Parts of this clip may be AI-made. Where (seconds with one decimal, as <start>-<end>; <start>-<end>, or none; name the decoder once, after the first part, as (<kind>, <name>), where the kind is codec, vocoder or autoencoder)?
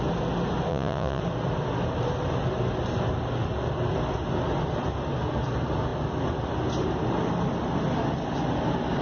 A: 0.7-1.2 (vocoder, Vocos)